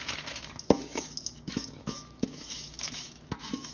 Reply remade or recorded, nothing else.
remade